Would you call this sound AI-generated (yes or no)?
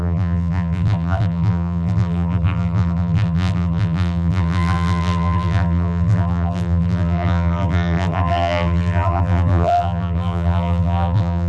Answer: yes